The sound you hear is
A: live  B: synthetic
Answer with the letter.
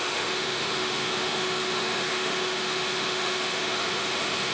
B